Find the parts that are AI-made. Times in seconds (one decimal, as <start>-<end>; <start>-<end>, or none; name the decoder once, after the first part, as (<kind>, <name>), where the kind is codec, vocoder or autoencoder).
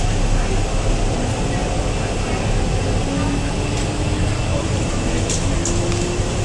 4.5-5.2 (vocoder, BigVGAN v2)